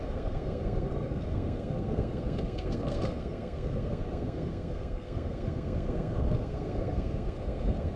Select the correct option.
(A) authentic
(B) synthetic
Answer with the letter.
B